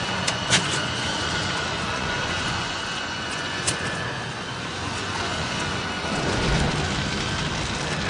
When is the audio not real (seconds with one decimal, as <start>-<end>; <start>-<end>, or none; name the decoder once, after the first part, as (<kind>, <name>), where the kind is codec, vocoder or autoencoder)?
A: 0.0-6.7 (vocoder, Vocos)